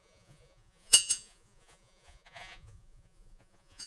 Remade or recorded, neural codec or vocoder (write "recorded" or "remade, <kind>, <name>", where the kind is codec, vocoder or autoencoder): remade, vocoder, Vocos